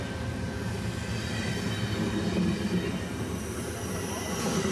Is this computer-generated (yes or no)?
no